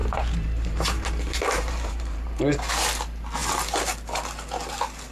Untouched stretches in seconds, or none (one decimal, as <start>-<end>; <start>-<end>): 2.4-5.1